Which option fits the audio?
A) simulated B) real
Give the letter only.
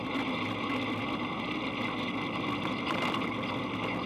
B